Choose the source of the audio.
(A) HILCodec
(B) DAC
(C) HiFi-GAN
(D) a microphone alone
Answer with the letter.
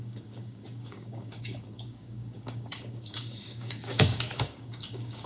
B